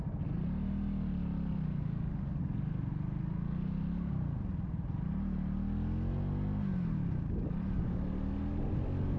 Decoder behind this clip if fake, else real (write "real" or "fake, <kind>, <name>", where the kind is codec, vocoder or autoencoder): real